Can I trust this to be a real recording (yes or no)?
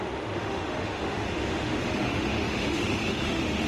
no